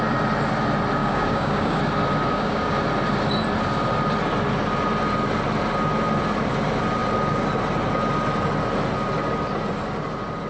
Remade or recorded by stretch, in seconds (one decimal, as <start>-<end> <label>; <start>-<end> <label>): 0.0-1.0 recorded; 1.0-1.8 remade; 1.8-2.3 recorded; 2.3-2.8 remade; 2.8-10.5 recorded